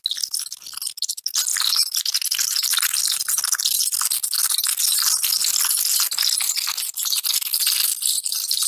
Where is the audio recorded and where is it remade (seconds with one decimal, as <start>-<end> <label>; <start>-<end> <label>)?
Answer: 0.0-7.5 recorded; 7.5-8.7 remade